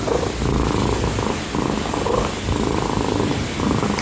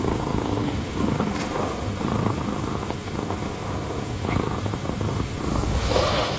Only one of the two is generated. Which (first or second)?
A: second